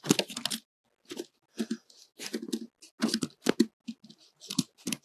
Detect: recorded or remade recorded